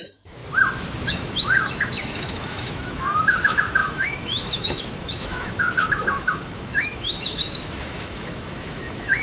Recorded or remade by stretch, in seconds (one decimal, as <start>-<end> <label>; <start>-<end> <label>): 0.0-0.4 remade; 0.4-1.1 recorded; 1.1-9.2 remade